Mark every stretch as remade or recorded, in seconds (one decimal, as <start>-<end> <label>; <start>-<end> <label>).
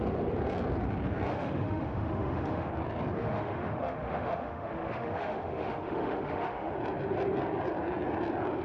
0.0-1.3 recorded; 1.3-2.7 remade; 2.7-3.2 recorded; 3.2-6.7 remade; 6.7-8.6 recorded